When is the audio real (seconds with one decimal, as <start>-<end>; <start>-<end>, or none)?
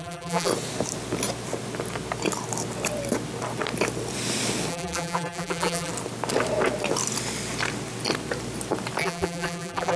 0.5-4.7; 5.9-9.0